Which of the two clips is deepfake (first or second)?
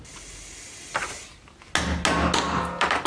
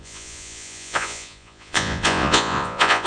second